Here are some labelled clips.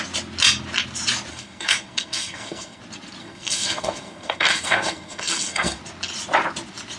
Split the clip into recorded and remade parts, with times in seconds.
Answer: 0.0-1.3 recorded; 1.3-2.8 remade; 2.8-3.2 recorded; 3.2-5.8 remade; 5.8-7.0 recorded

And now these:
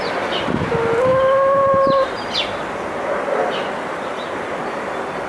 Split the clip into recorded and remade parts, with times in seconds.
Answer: 0.0-5.3 recorded

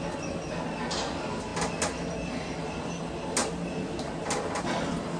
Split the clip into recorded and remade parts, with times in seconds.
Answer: 0.0-3.4 recorded; 3.4-4.5 remade; 4.5-5.2 recorded

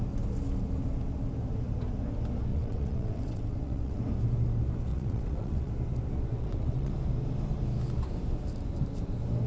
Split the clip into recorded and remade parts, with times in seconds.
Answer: 0.0-2.5 recorded; 2.5-4.0 remade; 4.0-4.9 recorded; 4.9-5.7 remade; 5.7-6.3 recorded; 6.3-6.9 remade; 6.9-9.5 recorded

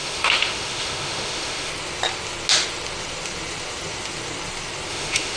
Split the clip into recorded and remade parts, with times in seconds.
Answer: 0.0-1.7 remade; 1.7-4.9 recorded; 4.9-5.4 remade

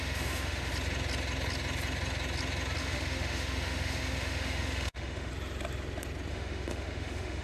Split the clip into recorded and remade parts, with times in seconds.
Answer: 0.0-0.7 remade; 0.7-2.8 recorded; 2.8-5.3 remade; 5.3-6.3 recorded; 6.3-7.4 remade